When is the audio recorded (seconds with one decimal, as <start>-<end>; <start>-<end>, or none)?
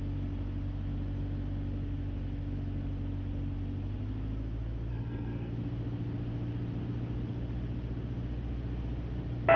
0.0-4.9; 5.5-9.6